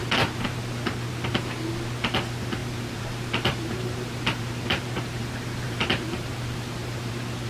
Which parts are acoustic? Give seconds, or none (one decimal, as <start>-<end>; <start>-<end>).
0.0-2.6; 7.1-7.5